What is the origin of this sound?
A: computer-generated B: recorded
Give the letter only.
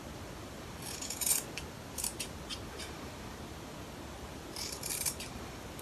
B